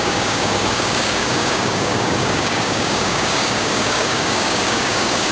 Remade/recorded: remade